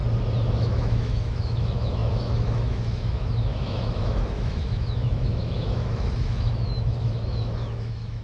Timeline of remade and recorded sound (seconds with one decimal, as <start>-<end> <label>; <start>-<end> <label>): 0.0-0.6 recorded; 0.6-8.2 remade